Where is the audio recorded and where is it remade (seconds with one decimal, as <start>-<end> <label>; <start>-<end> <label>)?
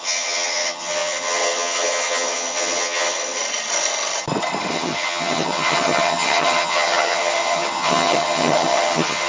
0.0-3.4 remade; 3.4-4.7 recorded; 4.7-9.3 remade